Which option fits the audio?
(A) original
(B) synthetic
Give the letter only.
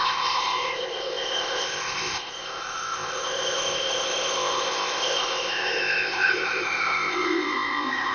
B